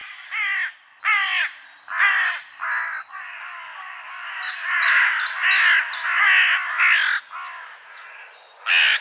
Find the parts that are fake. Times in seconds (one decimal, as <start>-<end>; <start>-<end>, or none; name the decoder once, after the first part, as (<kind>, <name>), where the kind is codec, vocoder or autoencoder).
none